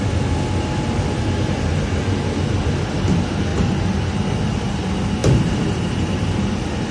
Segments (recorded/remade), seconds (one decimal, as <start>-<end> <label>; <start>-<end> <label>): 0.0-3.5 recorded; 3.5-4.4 remade; 4.4-5.2 recorded; 5.2-6.4 remade; 6.4-6.9 recorded